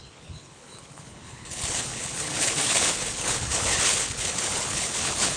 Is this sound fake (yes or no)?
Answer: yes